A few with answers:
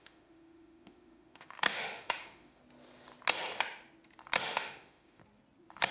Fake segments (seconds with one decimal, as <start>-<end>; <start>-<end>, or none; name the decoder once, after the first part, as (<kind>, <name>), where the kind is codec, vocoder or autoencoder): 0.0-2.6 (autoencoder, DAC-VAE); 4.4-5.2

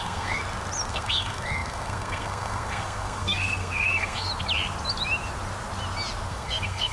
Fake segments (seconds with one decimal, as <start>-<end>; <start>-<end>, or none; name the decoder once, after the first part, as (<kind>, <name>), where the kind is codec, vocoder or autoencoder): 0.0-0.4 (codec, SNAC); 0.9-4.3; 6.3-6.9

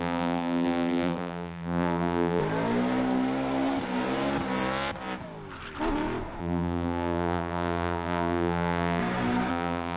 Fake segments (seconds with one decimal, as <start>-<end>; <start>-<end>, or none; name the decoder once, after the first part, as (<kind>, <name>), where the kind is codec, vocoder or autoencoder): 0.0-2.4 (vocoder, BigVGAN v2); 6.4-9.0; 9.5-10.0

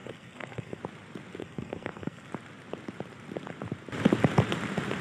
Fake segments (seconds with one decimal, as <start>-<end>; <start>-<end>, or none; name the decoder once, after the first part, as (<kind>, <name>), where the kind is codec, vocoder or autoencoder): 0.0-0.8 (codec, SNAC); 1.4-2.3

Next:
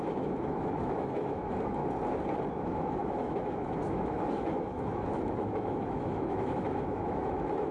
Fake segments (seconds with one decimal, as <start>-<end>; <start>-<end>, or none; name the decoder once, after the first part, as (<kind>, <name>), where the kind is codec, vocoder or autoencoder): 0.0-1.8 (autoencoder, DAC-VAE); 2.5-7.7

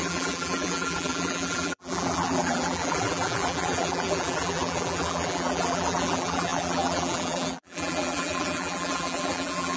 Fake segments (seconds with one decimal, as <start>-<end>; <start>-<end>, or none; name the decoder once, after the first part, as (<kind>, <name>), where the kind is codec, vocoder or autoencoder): 0.0-9.8 (vocoder, BigVGAN v2)